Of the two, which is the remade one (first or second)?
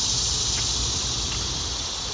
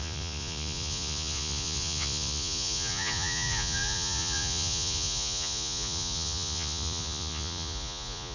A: second